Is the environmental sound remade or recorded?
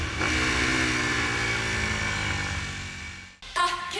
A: recorded